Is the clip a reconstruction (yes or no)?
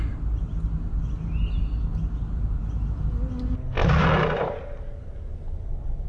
no